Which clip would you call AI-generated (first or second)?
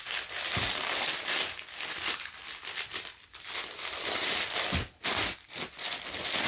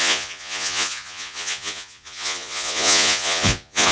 second